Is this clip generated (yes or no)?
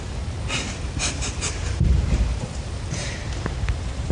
yes